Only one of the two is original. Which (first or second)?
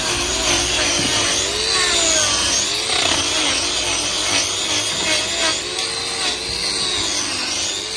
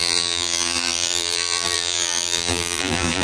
first